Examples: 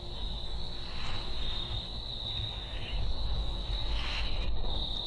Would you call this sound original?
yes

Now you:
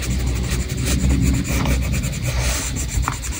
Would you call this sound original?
yes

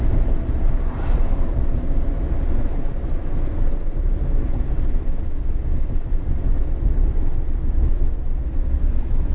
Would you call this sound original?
yes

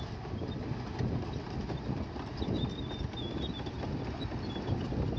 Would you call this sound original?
yes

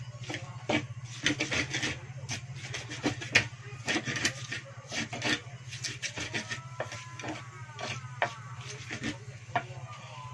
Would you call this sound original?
yes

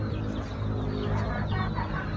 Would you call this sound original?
yes